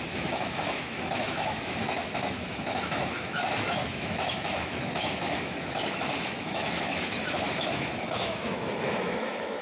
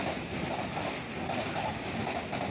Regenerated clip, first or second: first